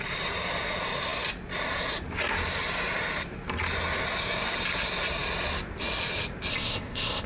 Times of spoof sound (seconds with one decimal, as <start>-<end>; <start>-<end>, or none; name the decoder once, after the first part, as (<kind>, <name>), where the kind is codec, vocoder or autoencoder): 6.5-7.3 (codec, ZipCodec)